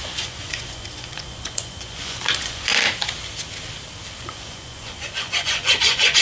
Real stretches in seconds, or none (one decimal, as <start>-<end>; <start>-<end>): 2.7-4.2